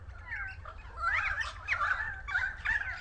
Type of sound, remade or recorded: recorded